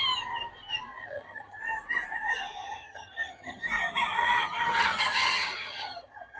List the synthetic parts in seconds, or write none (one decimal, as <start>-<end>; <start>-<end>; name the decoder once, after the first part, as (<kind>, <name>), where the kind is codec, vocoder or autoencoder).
1.0-1.6 (vocoder, HiFi-GAN); 2.6-3.6; 4.1-6.4